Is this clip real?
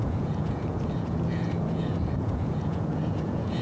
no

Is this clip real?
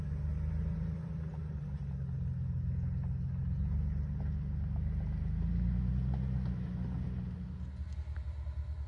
yes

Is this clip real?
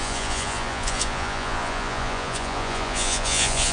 no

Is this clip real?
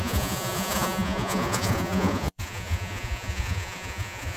no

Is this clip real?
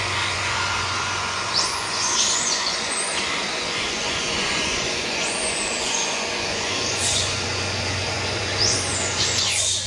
no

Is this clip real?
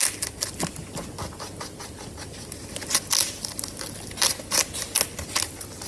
yes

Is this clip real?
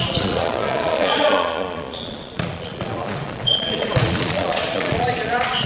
no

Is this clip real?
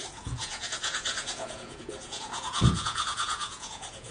no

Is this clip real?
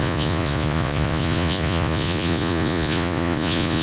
no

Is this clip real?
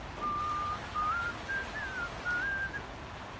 yes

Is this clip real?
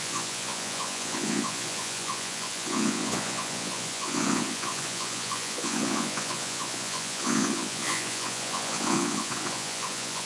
no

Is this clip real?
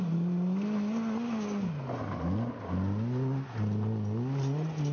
yes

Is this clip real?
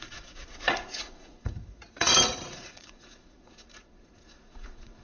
no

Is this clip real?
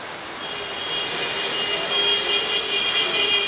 yes